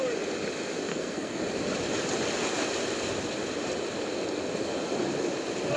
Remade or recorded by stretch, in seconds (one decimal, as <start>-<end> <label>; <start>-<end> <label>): 0.0-0.9 recorded; 0.9-1.4 remade; 1.4-5.8 recorded